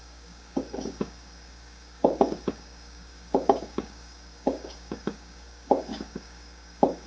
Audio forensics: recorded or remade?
remade